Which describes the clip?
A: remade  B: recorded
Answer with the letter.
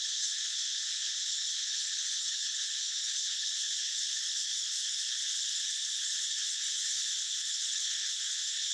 A